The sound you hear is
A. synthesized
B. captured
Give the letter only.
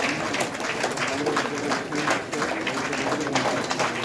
B